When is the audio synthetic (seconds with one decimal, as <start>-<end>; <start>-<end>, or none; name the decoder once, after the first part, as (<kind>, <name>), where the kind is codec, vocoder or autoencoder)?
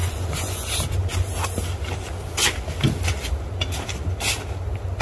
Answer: 0.0-0.7 (vocoder, Vocos)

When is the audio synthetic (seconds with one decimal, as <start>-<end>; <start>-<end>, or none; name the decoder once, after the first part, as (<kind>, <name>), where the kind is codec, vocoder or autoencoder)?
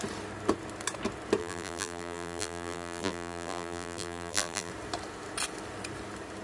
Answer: 1.4-4.7 (vocoder, BigVGAN v2)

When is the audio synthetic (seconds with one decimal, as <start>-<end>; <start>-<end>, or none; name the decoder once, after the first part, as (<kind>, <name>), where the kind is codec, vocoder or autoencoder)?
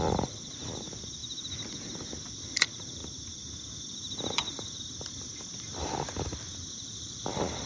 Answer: none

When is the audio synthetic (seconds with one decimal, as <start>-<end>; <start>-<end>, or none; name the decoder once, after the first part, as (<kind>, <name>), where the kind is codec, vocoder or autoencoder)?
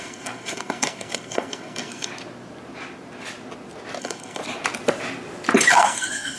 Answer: 0.0-2.1 (codec, SNAC); 4.0-4.4; 5.7-6.4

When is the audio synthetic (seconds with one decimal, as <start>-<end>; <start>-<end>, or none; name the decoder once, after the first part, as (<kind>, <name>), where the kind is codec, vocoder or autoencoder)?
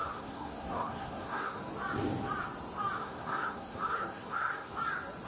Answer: 0.0-1.6 (codec, SNAC); 3.0-4.7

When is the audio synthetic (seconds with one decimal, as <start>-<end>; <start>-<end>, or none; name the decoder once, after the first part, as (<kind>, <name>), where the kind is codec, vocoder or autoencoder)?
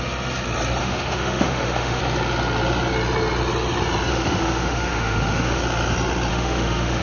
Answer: 0.8-2.0 (autoencoder, DAC-VAE); 4.1-5.6; 6.3-7.0